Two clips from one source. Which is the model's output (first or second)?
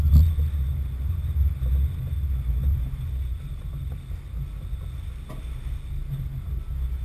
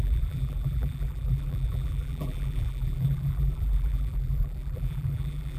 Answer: second